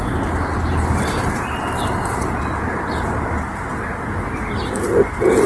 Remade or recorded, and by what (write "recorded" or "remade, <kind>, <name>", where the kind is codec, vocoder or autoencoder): remade, vocoder, BigVGAN v2